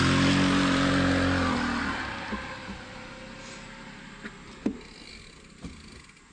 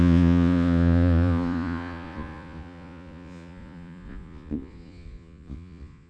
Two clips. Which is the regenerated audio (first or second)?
second